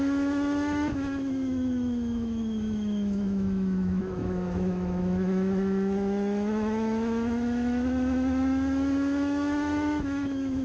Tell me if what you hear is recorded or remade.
remade